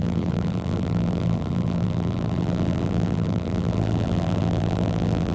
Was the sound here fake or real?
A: fake